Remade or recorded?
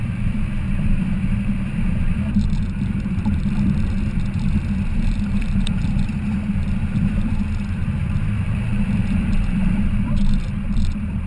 remade